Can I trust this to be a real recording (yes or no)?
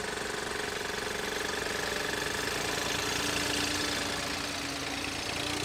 yes